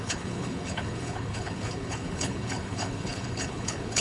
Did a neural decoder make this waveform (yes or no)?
yes